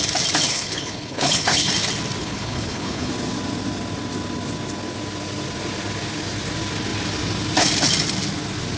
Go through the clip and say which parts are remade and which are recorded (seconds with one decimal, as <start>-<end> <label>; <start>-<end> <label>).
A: 0.0-0.5 recorded; 0.5-1.7 remade; 1.7-2.2 recorded; 2.2-3.1 remade; 3.1-8.8 recorded